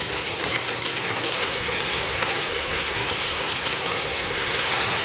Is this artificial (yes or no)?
yes